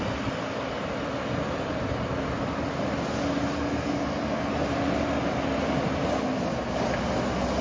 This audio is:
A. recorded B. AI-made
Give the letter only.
A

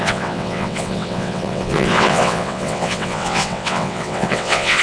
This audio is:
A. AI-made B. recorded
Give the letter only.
A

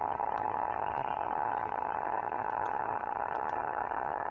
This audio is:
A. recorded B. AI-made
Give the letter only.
B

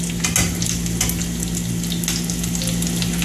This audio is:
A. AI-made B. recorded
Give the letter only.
B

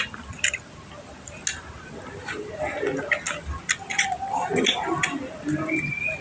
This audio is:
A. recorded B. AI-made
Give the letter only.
A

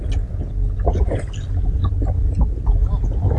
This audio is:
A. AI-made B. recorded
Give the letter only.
B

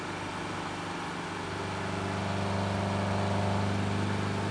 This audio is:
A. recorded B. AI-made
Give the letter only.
A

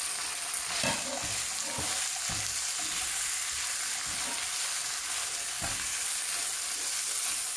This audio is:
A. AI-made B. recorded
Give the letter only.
B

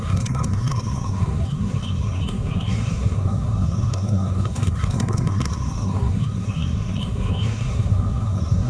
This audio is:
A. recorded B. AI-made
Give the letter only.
B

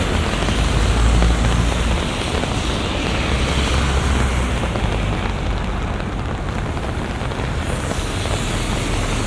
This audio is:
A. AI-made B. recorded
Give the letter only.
B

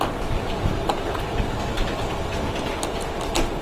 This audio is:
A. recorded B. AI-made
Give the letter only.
A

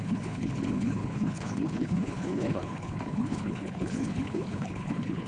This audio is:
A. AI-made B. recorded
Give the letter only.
A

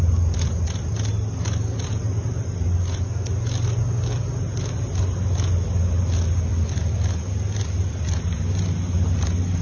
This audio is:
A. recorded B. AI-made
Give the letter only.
A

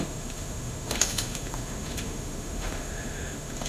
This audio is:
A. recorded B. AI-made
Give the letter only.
B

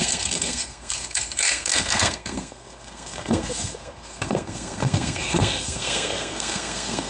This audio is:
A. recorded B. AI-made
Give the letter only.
B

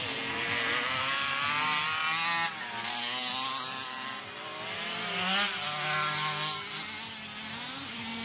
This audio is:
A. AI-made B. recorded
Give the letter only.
B